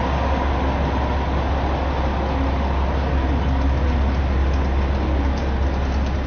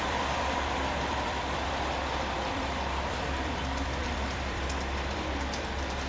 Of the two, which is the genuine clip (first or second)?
first